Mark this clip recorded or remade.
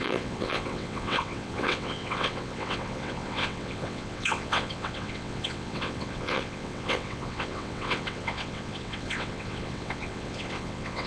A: remade